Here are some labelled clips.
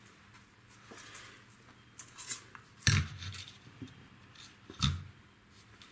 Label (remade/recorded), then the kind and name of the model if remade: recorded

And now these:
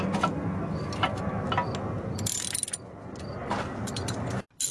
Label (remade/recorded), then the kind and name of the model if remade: recorded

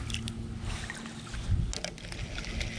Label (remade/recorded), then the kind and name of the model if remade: recorded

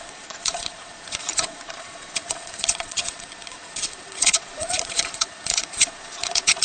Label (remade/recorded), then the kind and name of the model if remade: remade, vocoder, Vocos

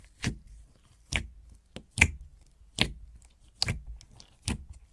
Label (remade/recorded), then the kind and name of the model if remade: recorded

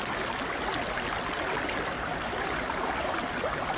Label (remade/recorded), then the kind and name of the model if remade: recorded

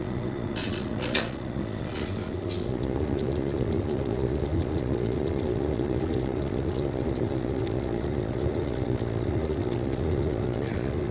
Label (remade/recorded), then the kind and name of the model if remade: remade, vocoder, Vocos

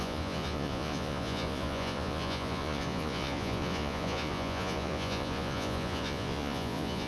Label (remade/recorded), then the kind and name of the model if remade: remade, vocoder, Vocos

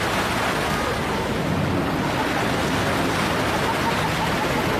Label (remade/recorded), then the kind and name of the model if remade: recorded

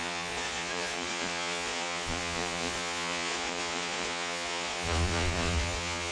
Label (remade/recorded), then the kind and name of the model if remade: remade, vocoder, Vocos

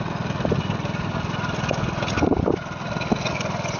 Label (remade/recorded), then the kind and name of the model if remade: recorded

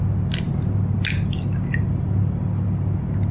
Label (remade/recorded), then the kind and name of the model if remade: recorded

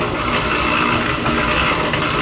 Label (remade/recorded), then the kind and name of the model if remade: recorded